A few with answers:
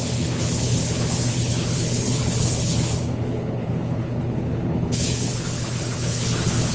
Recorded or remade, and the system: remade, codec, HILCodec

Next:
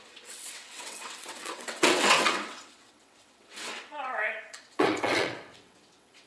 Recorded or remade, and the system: remade, vocoder, WaveNeXt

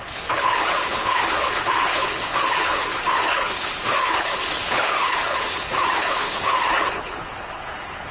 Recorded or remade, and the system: remade, codec, HILCodec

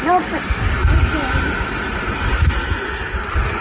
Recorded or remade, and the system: recorded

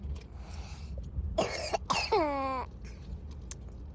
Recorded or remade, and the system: recorded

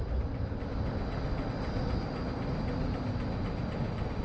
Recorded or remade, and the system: recorded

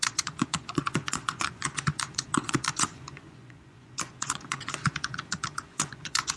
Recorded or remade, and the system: remade, vocoder, Vocos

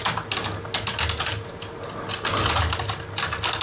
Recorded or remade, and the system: recorded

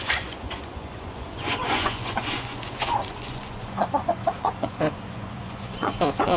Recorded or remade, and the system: remade, vocoder, Vocos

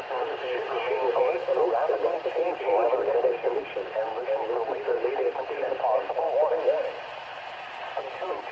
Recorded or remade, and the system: remade, vocoder, BigVGAN v2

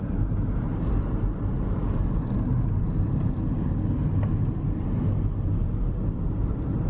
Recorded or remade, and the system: recorded